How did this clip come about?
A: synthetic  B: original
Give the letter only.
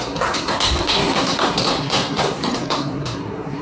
A